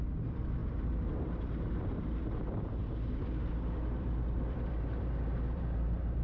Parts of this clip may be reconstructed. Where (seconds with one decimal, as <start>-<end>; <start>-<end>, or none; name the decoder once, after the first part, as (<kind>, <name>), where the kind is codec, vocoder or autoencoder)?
0.0-6.2 (vocoder, BigVGAN v2)

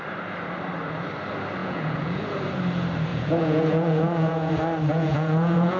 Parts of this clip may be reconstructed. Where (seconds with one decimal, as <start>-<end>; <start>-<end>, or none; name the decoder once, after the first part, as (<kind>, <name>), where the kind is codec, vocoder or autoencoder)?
1.6-2.2 (vocoder, Vocos); 3.1-4.5; 4.9-5.8